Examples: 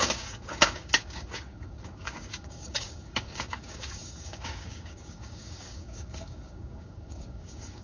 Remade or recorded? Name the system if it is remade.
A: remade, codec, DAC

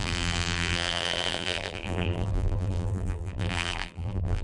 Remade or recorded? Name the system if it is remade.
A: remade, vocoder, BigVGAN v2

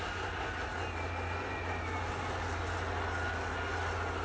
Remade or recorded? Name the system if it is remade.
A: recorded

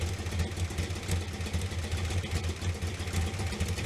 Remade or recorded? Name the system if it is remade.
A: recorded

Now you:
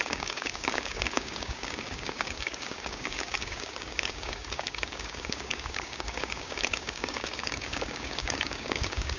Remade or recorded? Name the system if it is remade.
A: remade, codec, DAC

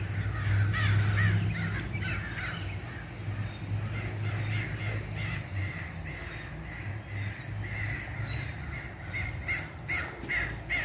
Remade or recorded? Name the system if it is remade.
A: recorded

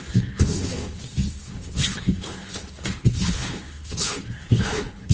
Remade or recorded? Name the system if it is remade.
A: remade, codec, HILCodec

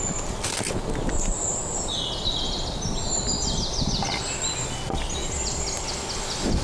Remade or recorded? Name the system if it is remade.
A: recorded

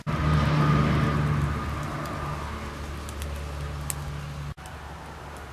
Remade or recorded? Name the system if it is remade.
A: recorded